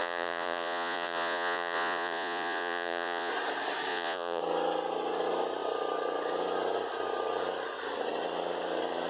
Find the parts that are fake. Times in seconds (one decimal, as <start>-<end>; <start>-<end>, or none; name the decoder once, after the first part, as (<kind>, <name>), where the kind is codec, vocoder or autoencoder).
0.0-3.3 (vocoder, Vocos); 3.9-4.4